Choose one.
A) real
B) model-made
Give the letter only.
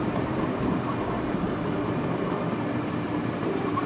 B